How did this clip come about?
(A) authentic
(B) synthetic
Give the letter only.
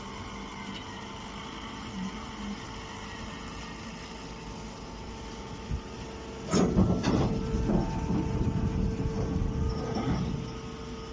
A